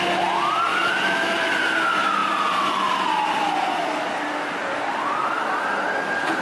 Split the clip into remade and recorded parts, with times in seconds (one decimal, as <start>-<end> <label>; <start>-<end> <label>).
0.0-0.7 recorded; 0.7-1.3 remade; 1.3-6.4 recorded